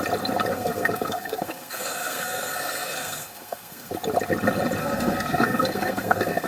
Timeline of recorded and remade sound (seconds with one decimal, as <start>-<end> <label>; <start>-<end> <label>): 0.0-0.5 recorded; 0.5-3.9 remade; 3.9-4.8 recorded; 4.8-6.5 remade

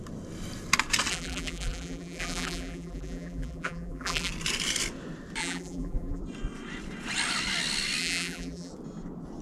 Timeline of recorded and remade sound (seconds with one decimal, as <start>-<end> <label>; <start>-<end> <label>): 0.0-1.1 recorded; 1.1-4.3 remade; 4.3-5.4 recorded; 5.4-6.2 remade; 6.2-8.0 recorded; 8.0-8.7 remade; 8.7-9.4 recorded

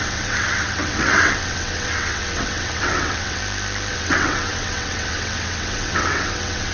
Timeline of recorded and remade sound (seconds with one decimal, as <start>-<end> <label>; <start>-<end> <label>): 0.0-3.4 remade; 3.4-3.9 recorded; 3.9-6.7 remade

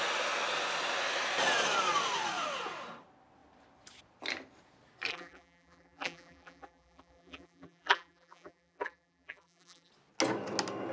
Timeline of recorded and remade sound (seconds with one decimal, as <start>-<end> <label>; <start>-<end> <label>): 0.0-5.1 recorded; 5.1-9.9 remade; 9.9-10.9 recorded